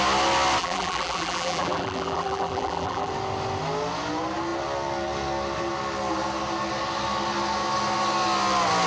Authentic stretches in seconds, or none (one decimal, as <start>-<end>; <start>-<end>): 0.0-0.6; 3.1-8.9

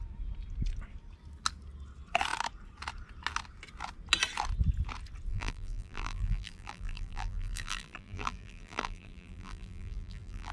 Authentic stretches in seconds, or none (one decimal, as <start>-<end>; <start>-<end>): 0.0-5.3

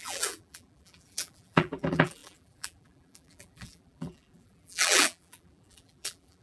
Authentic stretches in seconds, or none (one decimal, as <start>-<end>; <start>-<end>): none